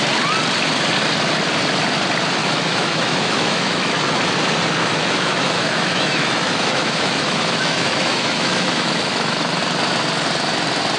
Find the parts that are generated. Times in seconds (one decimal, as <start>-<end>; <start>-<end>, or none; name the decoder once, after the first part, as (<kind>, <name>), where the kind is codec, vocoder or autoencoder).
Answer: 2.4-4.1 (autoencoder, DAC-VAE); 4.8-9.6